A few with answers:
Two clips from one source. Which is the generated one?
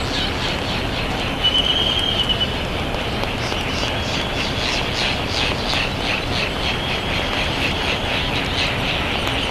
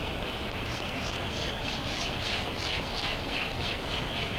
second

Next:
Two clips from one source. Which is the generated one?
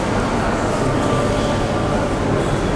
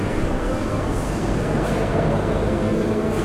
second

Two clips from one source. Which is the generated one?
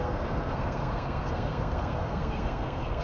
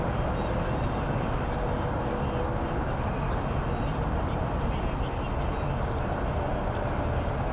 first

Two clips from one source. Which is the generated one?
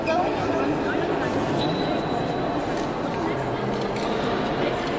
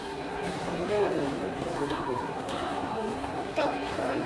second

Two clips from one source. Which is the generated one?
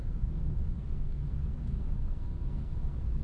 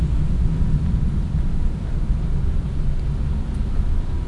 first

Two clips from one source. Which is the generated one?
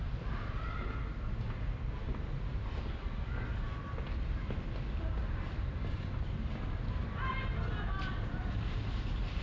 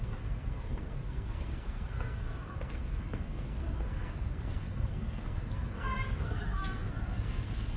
second